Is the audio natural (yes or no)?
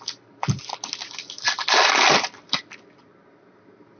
yes